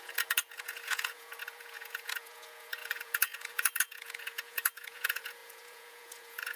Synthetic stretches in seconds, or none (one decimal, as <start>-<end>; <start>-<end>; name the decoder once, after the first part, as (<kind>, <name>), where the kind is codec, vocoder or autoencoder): 0.0-6.6 (vocoder, Vocos)